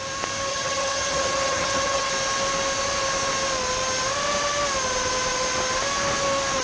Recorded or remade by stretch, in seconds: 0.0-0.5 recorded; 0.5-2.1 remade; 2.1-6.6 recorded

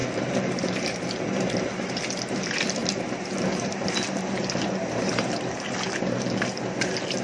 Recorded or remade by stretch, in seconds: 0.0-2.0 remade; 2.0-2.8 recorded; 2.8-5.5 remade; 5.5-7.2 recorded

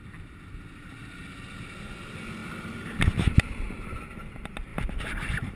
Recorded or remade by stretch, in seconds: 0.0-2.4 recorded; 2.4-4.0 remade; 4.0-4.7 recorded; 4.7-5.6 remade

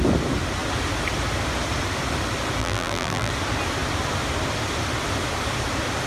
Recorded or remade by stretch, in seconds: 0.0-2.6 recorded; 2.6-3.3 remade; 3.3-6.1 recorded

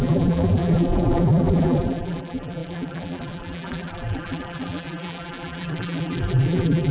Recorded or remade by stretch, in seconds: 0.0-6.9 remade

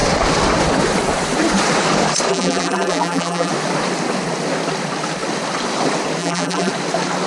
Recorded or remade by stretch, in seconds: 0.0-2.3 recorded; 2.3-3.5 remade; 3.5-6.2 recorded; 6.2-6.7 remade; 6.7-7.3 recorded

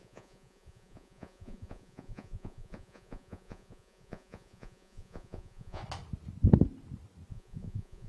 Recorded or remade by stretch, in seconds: 0.0-5.8 remade; 5.8-7.3 recorded; 7.3-8.1 remade

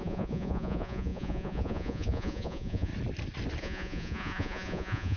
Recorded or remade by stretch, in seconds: 0.0-2.9 remade; 2.9-3.6 recorded; 3.6-5.2 remade